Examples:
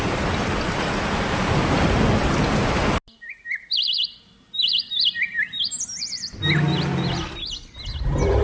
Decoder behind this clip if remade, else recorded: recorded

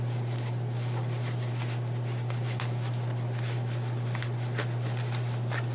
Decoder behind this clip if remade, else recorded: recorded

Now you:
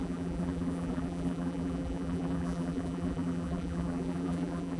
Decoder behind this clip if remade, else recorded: remade, vocoder, BigVGAN v2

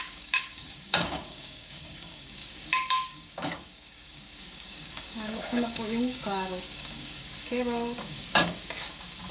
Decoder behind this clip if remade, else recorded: remade, codec, DAC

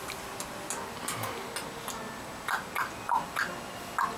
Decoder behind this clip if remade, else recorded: recorded